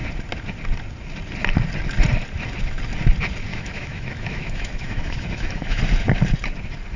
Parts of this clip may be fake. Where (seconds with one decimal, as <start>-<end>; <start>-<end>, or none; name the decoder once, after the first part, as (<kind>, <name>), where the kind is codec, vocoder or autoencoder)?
3.5-5.8 (autoencoder, DAC-VAE)